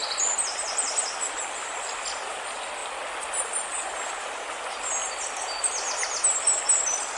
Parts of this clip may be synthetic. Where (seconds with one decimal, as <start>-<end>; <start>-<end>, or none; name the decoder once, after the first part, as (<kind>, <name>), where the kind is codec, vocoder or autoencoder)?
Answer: none